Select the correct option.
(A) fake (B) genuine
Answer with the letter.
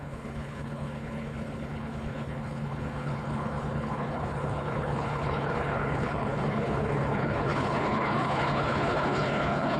A